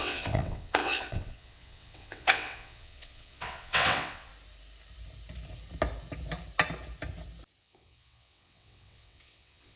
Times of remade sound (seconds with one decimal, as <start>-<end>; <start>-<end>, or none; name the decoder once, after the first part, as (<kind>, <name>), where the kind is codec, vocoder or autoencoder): 0.0-4.3 (vocoder, WaveNeXt); 7.6-9.8